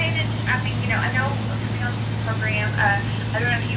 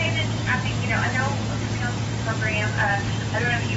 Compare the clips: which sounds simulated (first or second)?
second